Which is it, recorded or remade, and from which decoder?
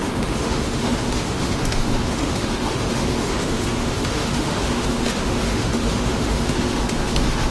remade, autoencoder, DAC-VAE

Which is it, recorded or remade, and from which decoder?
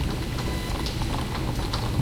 recorded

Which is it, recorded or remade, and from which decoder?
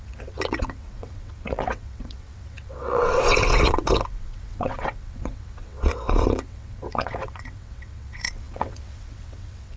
remade, vocoder, WaveNeXt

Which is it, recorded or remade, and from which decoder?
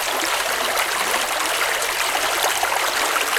recorded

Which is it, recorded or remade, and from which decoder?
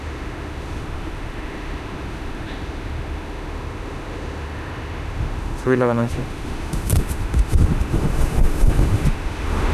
remade, autoencoder, DAC-VAE